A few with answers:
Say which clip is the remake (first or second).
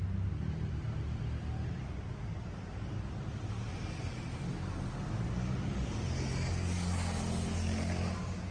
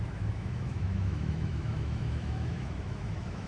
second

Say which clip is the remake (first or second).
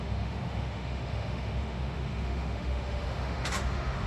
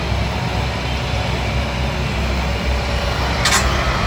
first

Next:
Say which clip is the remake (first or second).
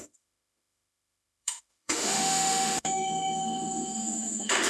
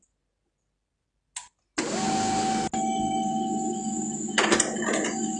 first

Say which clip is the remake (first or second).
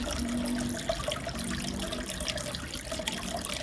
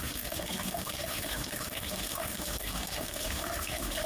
second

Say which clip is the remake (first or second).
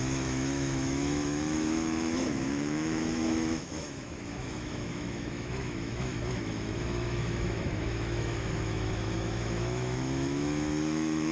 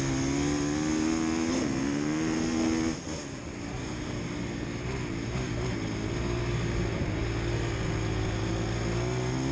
first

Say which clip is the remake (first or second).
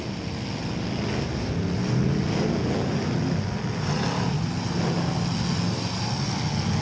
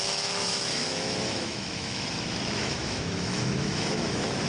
second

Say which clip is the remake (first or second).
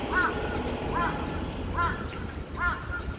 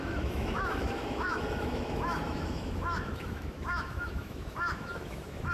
second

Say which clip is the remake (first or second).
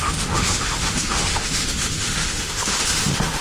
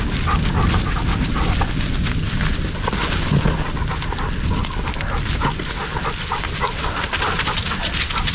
first